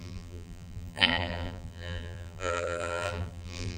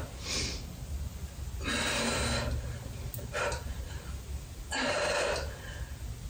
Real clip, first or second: second